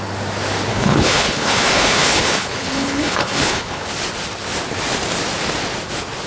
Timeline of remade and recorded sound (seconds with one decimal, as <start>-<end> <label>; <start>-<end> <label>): 0.0-0.7 recorded; 0.7-3.9 remade; 3.9-6.3 recorded